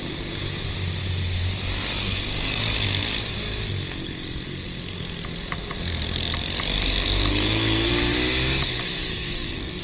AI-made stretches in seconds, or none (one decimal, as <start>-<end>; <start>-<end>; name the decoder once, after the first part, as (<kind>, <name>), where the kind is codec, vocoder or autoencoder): 2.0-2.6 (codec, SNAC); 7.3-7.9; 9.1-9.8